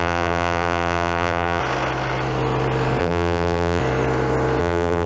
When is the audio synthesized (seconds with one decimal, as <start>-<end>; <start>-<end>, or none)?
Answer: 0.0-1.6; 3.0-3.8; 4.6-5.1